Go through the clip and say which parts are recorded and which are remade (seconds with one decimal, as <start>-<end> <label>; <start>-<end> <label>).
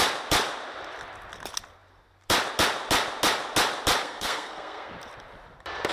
0.0-4.0 recorded; 4.0-4.9 remade; 4.9-5.9 recorded